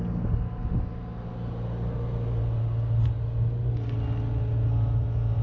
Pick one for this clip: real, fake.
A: real